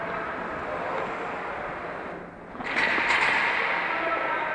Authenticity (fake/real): real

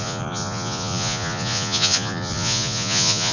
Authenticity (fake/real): fake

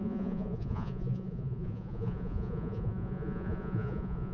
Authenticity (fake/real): fake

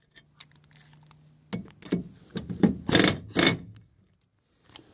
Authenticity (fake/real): real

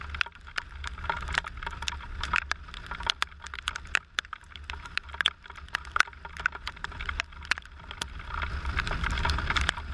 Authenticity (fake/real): real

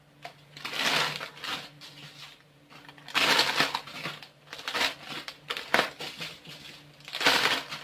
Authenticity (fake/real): real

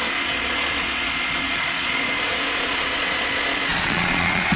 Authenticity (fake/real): fake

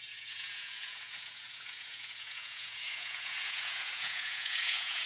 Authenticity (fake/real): fake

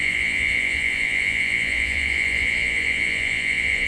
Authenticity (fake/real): fake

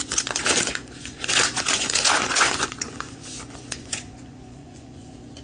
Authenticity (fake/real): fake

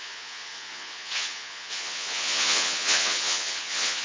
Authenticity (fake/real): fake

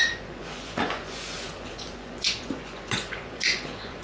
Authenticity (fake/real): fake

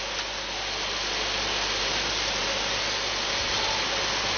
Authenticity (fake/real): real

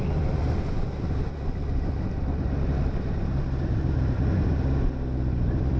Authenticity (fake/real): real